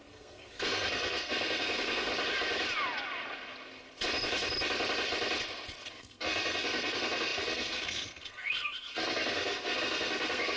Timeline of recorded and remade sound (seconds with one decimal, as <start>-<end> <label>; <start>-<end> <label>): 0.0-2.1 remade; 2.1-5.9 recorded; 5.9-10.6 remade